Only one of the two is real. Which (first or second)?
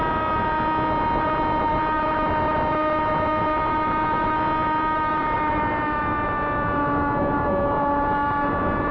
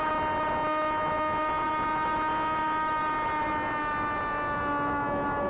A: second